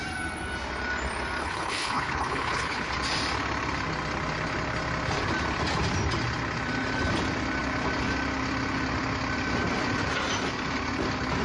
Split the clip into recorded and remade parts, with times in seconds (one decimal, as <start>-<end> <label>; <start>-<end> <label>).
0.0-1.4 recorded; 1.4-2.9 remade; 2.9-11.4 recorded